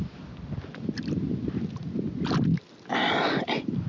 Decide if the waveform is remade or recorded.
recorded